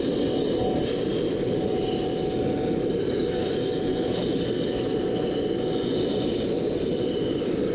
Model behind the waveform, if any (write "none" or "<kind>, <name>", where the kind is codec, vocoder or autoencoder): none